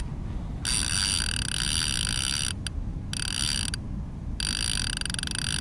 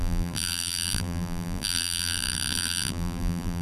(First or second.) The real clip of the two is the first